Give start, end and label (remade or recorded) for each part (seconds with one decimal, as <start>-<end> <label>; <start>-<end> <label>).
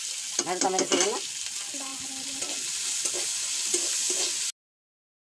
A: 0.0-5.4 recorded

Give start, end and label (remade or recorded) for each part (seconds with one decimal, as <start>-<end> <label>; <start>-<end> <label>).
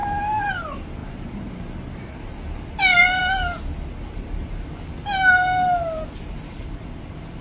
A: 0.0-7.4 recorded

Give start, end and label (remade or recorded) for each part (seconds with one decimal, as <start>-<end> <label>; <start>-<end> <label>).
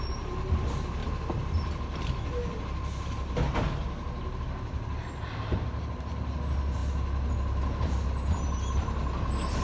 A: 0.0-9.6 recorded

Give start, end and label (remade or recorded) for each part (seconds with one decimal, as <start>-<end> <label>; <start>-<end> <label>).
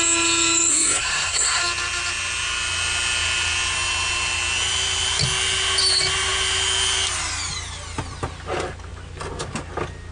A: 0.0-0.7 recorded; 0.7-1.6 remade; 1.6-10.1 recorded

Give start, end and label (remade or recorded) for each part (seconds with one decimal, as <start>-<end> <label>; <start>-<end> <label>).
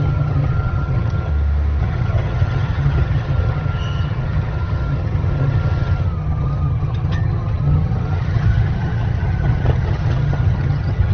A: 0.0-1.3 remade; 1.3-1.8 recorded; 1.8-11.1 remade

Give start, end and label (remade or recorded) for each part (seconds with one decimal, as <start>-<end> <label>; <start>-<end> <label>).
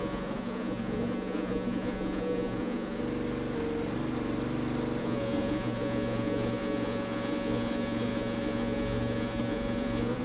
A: 0.0-3.0 remade; 3.0-5.0 recorded; 5.0-10.2 remade